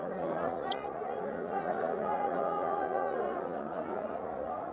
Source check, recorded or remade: remade